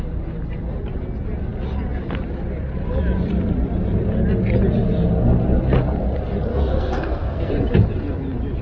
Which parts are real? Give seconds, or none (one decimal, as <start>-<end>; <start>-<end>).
0.0-6.5; 7.5-8.6